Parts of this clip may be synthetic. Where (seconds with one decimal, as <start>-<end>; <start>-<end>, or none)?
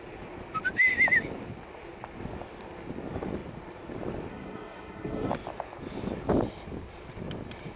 4.3-5.3